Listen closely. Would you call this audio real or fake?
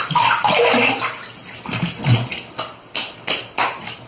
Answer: real